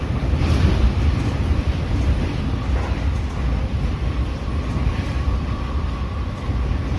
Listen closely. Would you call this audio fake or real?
fake